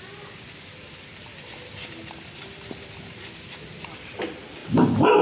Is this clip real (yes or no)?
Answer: yes